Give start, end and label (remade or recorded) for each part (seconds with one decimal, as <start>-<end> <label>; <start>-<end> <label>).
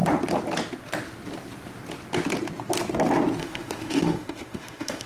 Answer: 0.0-3.4 recorded; 3.4-5.1 remade